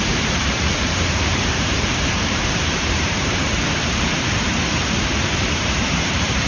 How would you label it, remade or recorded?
remade